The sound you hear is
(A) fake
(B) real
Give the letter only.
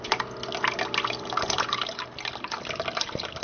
B